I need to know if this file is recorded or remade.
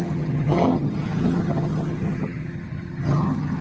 remade